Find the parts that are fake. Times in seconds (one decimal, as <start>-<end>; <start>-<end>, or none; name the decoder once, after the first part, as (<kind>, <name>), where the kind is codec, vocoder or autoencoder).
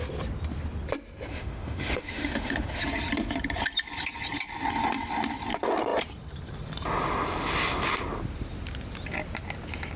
1.3-2.8 (autoencoder, DAC-VAE)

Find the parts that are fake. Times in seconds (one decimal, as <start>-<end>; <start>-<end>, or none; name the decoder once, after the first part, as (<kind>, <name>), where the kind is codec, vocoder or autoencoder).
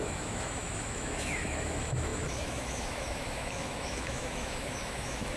0.0-5.4 (autoencoder, DAC-VAE)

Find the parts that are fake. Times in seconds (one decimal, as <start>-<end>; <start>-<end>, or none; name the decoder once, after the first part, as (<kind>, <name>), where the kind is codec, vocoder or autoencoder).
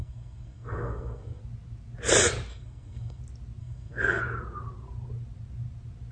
0.0-1.4 (codec, SNAC); 2.5-3.2; 3.6-4.2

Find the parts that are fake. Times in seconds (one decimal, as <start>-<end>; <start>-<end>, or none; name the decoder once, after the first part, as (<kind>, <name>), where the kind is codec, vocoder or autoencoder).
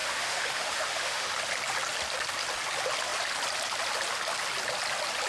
0.0-1.3 (autoencoder, DAC-VAE)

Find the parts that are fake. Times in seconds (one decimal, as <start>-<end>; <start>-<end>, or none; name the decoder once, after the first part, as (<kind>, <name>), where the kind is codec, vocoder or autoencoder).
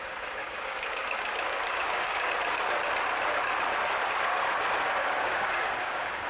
0.4-2.3 (codec, DAC); 5.0-6.3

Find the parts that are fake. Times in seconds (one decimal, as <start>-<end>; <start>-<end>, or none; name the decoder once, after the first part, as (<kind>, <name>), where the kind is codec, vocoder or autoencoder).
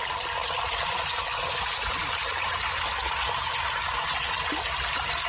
none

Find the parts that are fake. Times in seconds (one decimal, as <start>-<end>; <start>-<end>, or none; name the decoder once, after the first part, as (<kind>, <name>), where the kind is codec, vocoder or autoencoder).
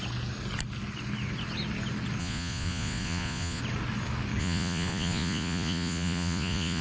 2.2-3.6 (vocoder, Vocos); 4.4-6.8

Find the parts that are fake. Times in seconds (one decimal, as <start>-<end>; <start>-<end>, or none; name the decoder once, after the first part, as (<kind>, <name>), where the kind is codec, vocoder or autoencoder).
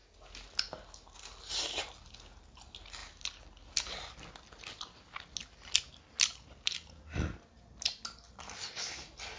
none